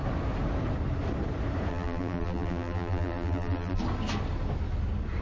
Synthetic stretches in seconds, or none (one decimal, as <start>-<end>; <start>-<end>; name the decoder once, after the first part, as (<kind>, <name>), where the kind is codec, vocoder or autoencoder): 1.7-3.8 (vocoder, BigVGAN v2)